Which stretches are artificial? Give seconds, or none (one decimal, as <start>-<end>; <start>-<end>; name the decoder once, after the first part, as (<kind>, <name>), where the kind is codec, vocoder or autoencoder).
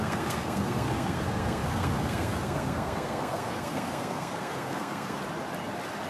0.0-5.2 (codec, SNAC)